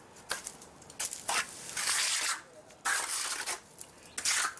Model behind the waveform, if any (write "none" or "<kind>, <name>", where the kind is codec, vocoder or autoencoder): none